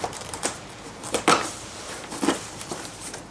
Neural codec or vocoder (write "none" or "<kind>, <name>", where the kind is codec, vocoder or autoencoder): none